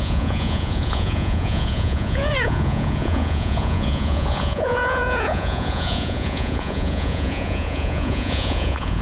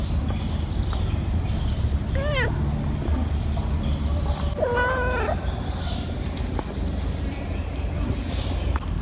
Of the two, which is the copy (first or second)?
first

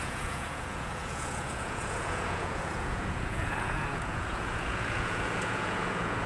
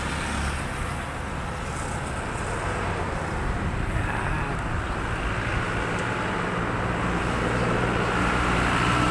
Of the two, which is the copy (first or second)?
first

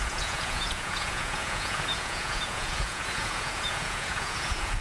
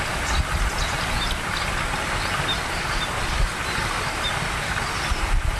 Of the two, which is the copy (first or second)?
first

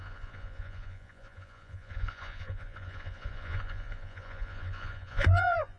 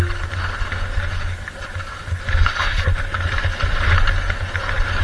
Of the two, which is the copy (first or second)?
first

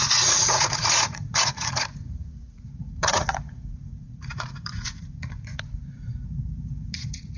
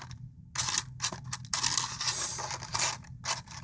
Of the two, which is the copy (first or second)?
first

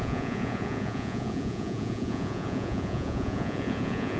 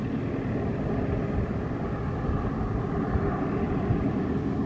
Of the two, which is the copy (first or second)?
first